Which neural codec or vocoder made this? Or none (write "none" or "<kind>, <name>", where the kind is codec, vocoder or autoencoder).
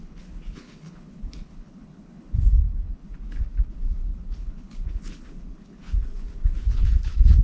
codec, HILCodec